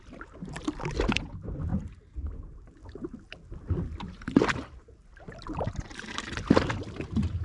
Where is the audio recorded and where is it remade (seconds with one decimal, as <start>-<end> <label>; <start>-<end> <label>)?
0.0-7.4 recorded